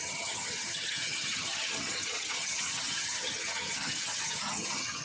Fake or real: fake